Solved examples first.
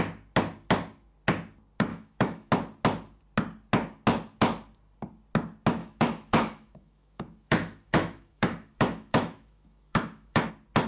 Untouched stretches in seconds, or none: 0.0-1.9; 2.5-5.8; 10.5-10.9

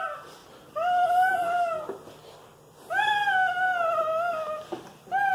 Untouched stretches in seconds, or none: 0.0-5.3

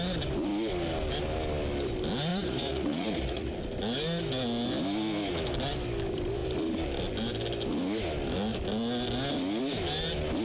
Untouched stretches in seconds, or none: 0.0-2.3; 3.5-10.4

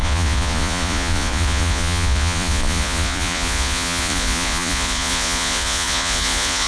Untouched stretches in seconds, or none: none

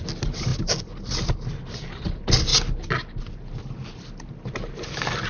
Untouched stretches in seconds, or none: 0.0-5.3

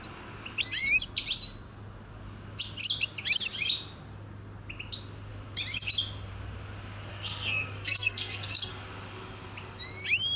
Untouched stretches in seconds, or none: 0.0-7.1; 8.7-10.4